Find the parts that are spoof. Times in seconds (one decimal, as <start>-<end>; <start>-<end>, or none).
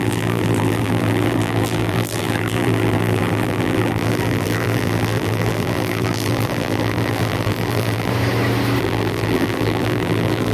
0.0-8.1; 8.8-10.5